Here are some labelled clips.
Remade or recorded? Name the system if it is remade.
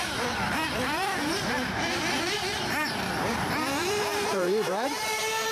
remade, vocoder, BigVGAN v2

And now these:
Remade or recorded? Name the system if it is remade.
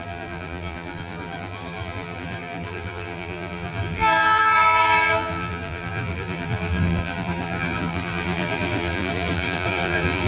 remade, vocoder, BigVGAN v2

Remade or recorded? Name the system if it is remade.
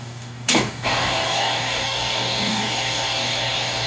remade, codec, DAC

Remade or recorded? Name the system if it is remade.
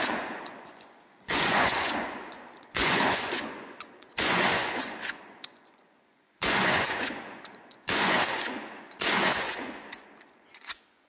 remade, vocoder, Vocos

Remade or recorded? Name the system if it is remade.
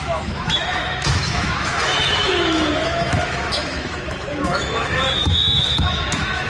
remade, autoencoder, DAC-VAE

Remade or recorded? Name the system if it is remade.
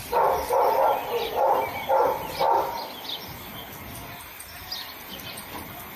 recorded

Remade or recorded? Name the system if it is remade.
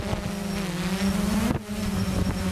recorded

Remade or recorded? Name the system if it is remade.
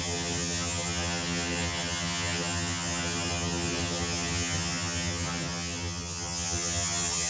remade, vocoder, HiFi-GAN